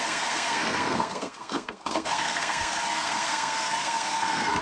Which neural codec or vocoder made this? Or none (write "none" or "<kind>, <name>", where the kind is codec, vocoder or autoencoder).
codec, SNAC